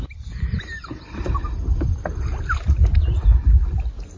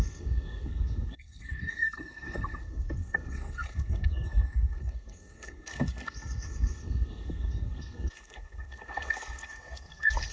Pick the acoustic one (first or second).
first